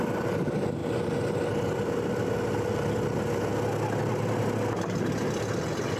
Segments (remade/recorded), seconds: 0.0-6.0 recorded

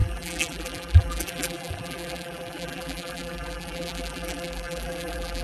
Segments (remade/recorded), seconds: 0.0-5.4 remade

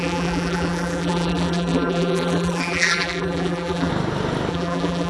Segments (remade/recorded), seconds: 0.0-3.9 remade; 3.9-4.5 recorded; 4.5-5.1 remade

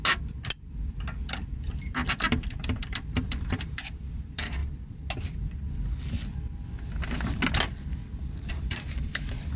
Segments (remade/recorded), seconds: 0.0-2.1 recorded; 2.1-4.6 remade; 4.6-8.5 recorded; 8.5-9.6 remade

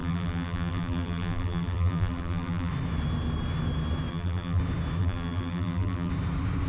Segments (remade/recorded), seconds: 0.0-2.7 remade; 2.7-4.1 recorded; 4.1-4.6 remade; 4.6-5.0 recorded; 5.0-6.1 remade; 6.1-6.7 recorded